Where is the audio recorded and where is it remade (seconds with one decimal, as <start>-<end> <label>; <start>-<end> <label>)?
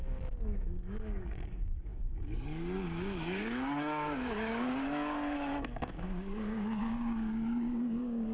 0.0-8.3 remade